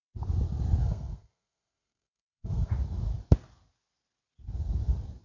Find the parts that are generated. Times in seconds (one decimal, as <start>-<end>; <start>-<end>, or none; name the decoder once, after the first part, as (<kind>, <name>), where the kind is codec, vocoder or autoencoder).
0.8-2.7 (codec, SNAC)